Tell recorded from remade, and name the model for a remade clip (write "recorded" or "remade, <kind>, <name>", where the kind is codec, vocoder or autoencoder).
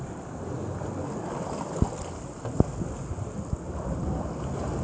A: recorded